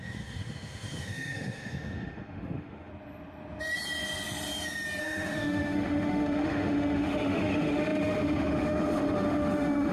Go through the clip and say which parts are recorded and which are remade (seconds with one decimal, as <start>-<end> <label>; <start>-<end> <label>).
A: 0.0-2.9 remade; 2.9-5.0 recorded; 5.0-9.9 remade